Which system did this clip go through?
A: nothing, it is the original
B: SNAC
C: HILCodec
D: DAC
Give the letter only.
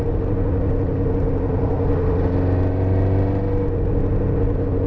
A